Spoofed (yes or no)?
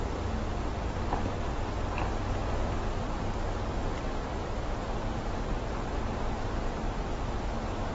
no